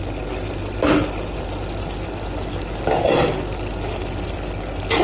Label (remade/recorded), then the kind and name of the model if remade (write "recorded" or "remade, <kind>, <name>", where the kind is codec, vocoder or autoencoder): recorded